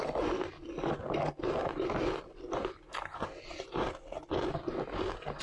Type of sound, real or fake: real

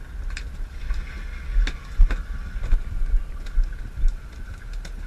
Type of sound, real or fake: real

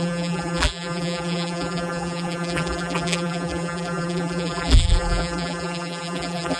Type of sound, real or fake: fake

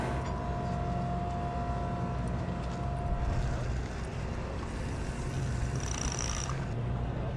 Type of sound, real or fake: real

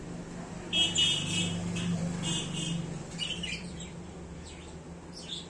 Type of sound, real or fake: real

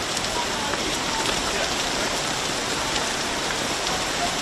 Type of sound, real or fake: fake